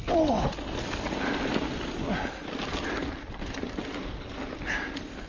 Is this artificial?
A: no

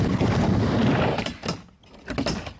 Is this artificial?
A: no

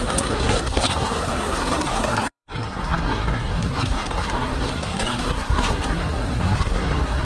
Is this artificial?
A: yes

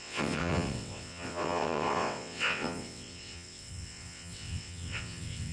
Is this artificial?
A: yes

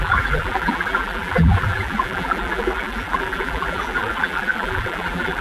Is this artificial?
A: yes